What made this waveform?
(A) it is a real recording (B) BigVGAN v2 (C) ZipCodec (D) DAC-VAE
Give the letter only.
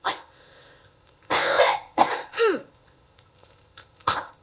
C